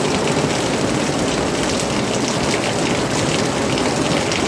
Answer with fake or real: real